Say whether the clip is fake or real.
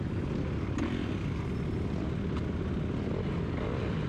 real